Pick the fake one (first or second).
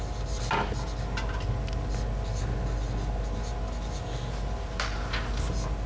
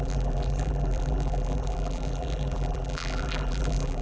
second